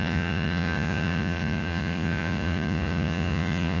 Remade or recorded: remade